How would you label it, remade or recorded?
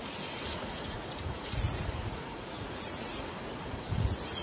remade